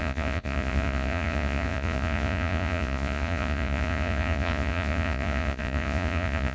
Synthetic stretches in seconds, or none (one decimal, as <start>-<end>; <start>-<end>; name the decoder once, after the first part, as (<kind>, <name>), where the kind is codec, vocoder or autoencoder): 0.0-6.5 (vocoder, Vocos)